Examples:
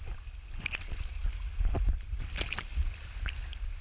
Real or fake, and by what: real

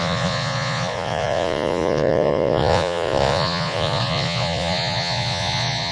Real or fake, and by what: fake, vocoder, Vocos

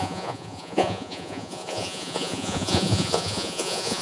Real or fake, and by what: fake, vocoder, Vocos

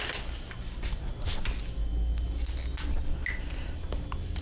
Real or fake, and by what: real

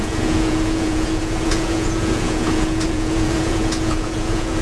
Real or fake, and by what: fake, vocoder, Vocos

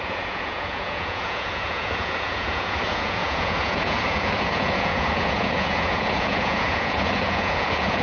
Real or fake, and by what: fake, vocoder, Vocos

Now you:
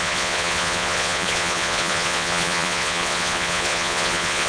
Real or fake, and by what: fake, vocoder, Vocos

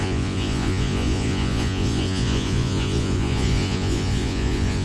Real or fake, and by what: fake, vocoder, Vocos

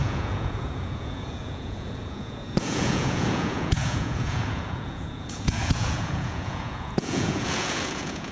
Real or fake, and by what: fake, vocoder, Vocos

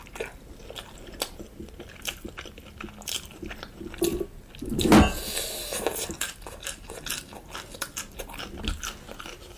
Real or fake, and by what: real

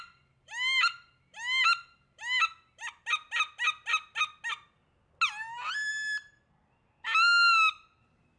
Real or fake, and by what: real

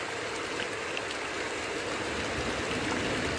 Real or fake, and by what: real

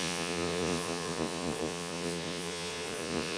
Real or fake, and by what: fake, vocoder, Vocos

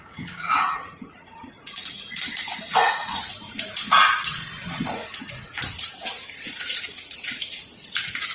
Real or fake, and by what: fake, vocoder, Vocos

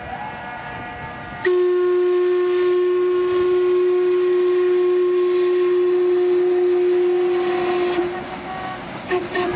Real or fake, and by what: real